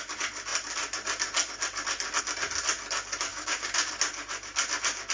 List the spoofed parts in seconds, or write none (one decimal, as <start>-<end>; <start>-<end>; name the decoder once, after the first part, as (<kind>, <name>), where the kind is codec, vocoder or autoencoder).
3.3-3.9 (codec, DAC)